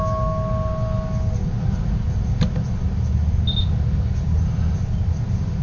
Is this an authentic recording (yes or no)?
yes